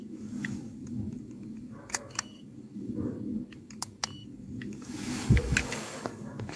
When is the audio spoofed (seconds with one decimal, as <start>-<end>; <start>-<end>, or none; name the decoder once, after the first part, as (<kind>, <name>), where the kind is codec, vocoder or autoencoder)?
0.0-6.6 (codec, DAC)